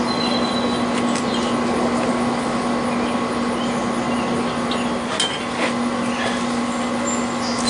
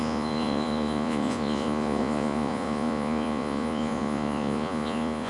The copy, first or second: second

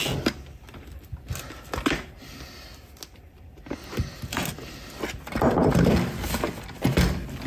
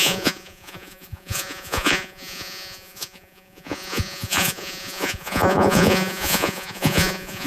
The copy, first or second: second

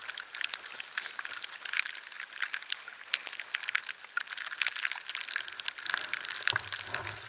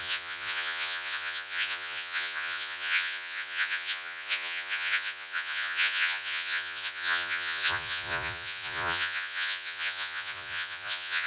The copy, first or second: second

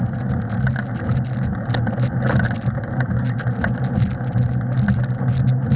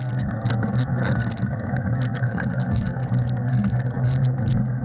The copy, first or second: second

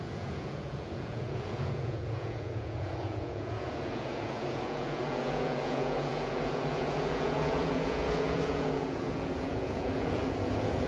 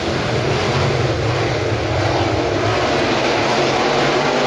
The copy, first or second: first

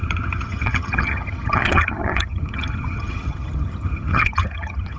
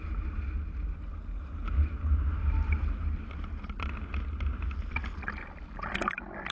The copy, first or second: first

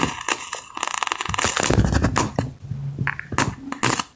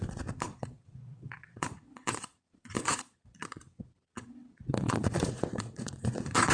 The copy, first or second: second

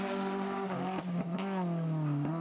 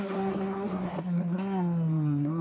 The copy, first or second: second